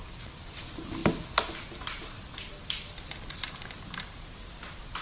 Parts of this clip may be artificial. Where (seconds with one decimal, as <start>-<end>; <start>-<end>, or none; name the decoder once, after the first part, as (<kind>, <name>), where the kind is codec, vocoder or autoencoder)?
none